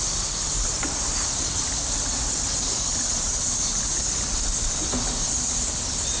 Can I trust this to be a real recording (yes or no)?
yes